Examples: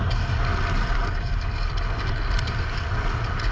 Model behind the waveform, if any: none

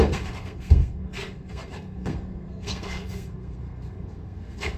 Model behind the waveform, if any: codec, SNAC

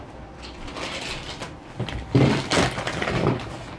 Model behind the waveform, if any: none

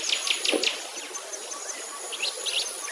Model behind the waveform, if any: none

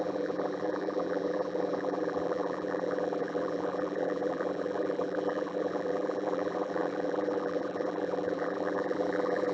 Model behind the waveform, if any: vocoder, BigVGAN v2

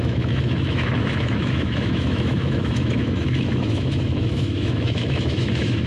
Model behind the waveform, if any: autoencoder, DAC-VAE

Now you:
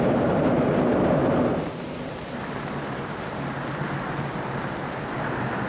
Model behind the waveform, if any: vocoder, BigVGAN v2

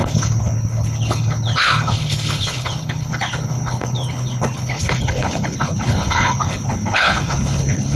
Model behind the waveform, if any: codec, HILCodec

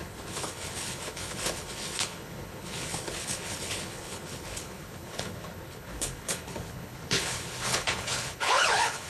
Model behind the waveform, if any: codec, HILCodec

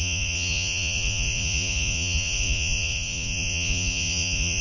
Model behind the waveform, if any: vocoder, Vocos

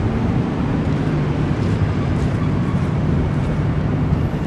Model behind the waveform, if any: vocoder, BigVGAN v2